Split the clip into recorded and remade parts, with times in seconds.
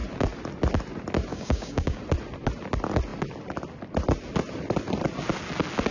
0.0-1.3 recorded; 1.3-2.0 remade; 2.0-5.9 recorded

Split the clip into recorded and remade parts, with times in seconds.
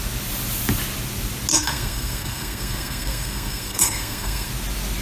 0.0-1.5 recorded; 1.5-4.5 remade; 4.5-5.0 recorded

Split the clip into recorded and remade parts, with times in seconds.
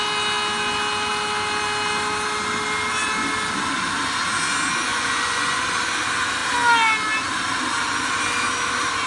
0.0-4.9 recorded; 4.9-5.6 remade; 5.6-9.1 recorded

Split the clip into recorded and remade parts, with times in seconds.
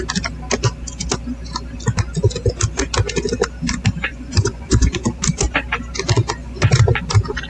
0.0-4.1 recorded; 4.1-5.2 remade; 5.2-6.4 recorded; 6.4-7.0 remade; 7.0-7.5 recorded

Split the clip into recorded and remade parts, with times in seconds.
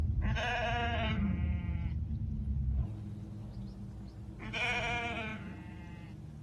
0.0-5.3 recorded; 5.3-6.4 remade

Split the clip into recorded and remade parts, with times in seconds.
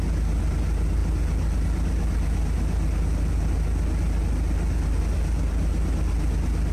0.0-6.7 recorded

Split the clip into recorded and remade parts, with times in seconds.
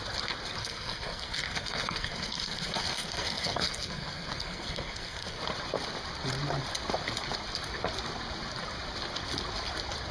0.0-0.6 recorded; 0.6-5.4 remade; 5.4-10.1 recorded